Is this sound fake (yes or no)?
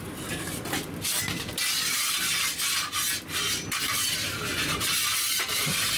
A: no